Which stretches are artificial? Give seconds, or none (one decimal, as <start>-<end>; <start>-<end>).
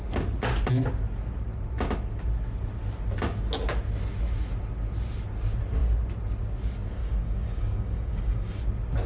7.0-8.6